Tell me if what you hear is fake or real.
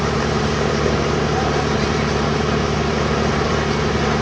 fake